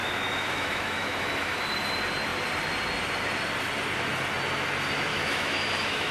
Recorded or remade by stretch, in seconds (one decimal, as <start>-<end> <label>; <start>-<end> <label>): 0.0-1.6 remade; 1.6-5.1 recorded; 5.1-6.1 remade